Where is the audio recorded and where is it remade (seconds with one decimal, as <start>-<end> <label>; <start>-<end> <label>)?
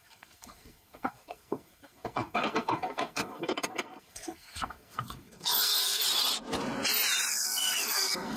0.0-6.0 remade; 6.0-7.3 recorded; 7.3-8.4 remade